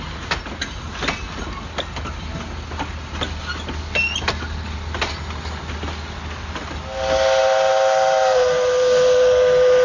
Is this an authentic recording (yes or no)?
yes